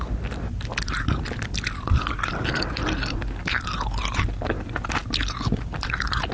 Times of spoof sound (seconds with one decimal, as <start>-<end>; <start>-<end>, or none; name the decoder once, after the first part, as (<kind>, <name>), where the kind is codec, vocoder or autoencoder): none